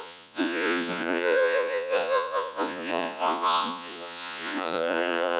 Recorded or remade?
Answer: remade